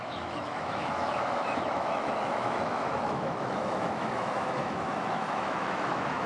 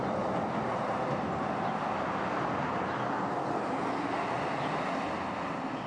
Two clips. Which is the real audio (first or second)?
second